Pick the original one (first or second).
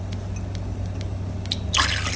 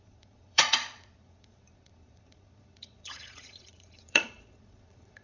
first